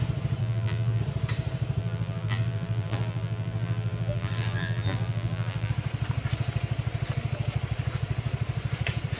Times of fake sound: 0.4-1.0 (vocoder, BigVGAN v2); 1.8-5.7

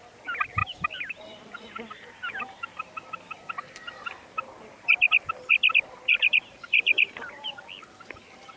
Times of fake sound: 0.6-1.2 (vocoder, BigVGAN v2); 6.1-7.6

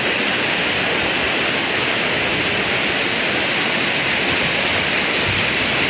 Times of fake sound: 3.6-5.4 (vocoder, BigVGAN v2)

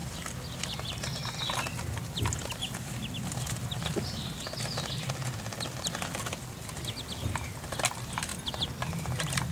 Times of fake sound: none

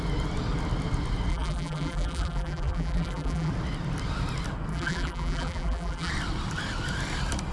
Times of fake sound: 1.3-3.5 (vocoder, BigVGAN v2); 4.7-6.1

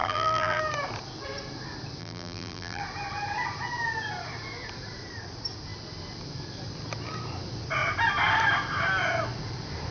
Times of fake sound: 0.0-0.6 (vocoder, BigVGAN v2); 2.0-2.8